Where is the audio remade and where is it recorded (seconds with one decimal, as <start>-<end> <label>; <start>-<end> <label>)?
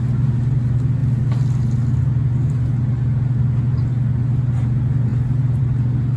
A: 0.0-6.2 recorded